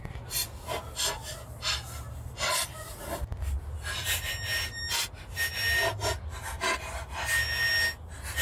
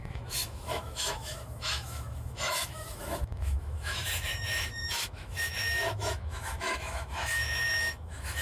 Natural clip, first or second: first